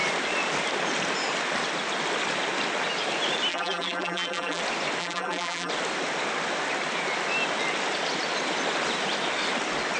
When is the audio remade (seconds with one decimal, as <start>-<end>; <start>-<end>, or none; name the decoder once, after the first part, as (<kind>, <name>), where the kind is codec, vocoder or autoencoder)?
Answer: 3.5-4.6 (vocoder, BigVGAN v2); 5.0-5.7